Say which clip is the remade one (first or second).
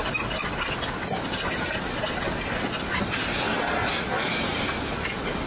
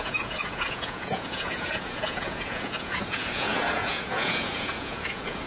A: second